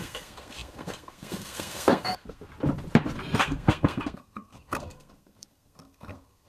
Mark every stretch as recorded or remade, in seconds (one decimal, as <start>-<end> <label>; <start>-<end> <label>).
0.0-2.5 remade; 2.5-3.4 recorded; 3.4-6.5 remade